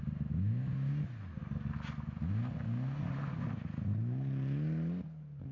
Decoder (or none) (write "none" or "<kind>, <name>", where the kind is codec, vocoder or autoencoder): none